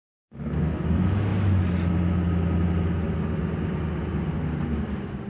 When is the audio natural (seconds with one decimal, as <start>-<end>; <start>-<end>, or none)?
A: 0.6-5.3

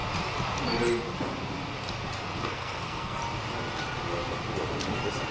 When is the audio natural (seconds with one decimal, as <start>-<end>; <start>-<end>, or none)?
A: 0.0-2.5; 3.2-5.3

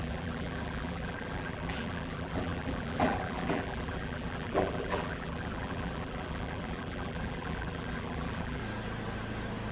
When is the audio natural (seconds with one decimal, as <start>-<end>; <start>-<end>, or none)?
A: 8.6-9.7

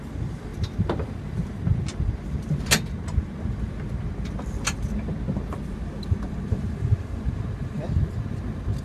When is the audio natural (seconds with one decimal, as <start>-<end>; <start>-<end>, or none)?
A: 0.0-8.8

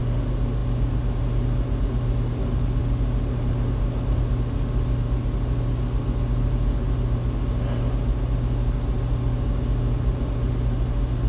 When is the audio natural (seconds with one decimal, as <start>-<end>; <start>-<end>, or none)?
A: 0.0-11.3

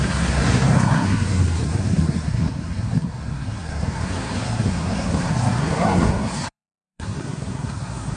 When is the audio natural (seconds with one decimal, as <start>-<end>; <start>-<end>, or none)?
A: none